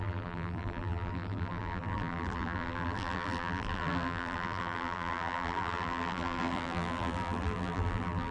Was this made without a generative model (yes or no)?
no